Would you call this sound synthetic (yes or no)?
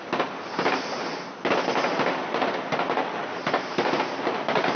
no